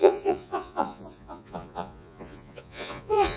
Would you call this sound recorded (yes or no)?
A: no